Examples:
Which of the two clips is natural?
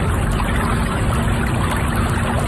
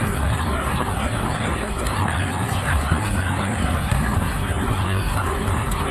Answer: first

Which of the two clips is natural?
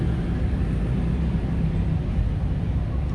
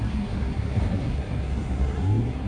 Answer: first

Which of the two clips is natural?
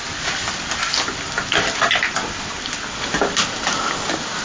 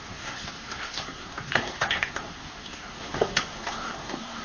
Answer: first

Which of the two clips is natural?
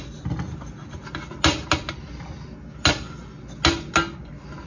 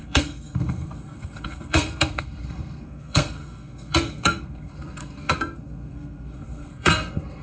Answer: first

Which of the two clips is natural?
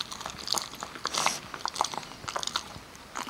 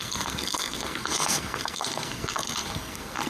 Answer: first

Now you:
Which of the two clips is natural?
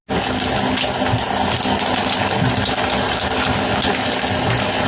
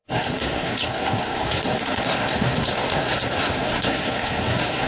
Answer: first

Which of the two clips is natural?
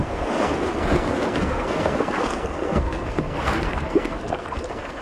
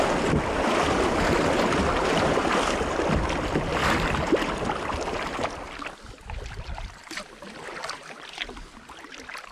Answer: second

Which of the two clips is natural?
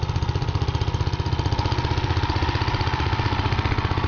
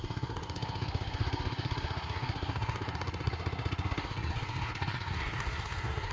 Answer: first